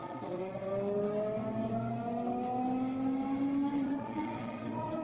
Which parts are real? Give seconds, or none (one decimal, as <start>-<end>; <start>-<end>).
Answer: 0.7-3.7